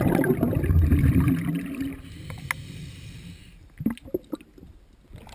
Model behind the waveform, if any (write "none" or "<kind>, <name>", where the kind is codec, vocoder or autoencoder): none